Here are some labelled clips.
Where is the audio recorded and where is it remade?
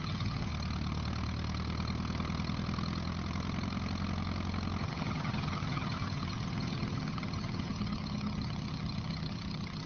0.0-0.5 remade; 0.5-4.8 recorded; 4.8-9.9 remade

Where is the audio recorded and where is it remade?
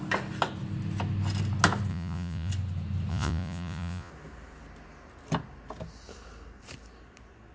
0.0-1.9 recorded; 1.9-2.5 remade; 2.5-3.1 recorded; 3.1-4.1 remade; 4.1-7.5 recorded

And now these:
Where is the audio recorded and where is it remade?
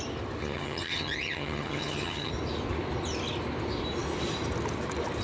0.0-0.4 recorded; 0.4-2.3 remade; 2.3-5.2 recorded